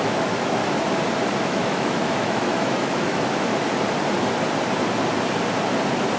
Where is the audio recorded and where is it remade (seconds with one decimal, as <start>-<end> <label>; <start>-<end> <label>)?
0.0-0.6 remade; 0.6-1.4 recorded; 1.4-3.5 remade; 3.5-6.2 recorded

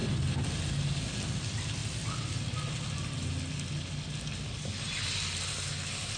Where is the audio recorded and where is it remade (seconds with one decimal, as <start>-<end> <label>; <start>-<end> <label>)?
0.0-6.2 recorded

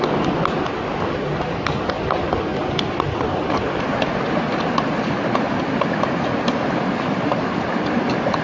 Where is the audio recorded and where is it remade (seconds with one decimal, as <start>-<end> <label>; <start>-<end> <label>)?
0.0-8.4 recorded

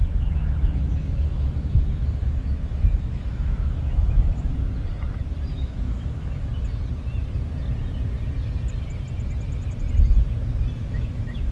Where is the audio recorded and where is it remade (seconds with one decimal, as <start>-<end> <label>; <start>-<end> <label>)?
0.0-4.5 remade; 4.5-5.5 recorded; 5.5-6.5 remade; 6.5-10.9 recorded; 10.9-11.5 remade

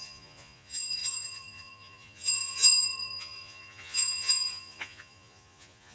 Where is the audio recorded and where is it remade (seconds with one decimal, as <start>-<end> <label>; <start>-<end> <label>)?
0.0-5.9 remade

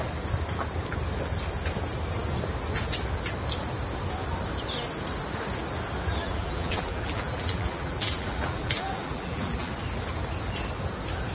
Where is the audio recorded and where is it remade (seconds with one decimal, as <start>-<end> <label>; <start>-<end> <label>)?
0.0-6.2 recorded; 6.2-9.7 remade; 9.7-11.3 recorded

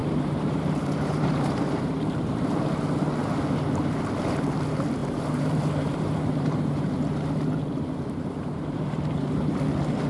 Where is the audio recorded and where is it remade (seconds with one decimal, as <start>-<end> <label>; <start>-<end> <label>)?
0.0-2.6 remade; 2.6-5.0 recorded; 5.0-9.5 remade; 9.5-10.1 recorded